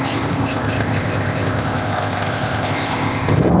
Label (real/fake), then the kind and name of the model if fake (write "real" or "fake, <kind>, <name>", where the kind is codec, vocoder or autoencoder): fake, codec, ZipCodec